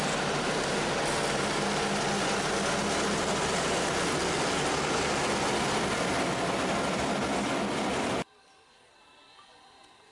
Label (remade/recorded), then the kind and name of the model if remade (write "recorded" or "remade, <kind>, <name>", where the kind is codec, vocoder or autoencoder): recorded